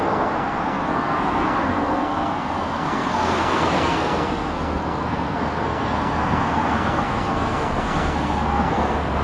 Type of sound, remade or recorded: remade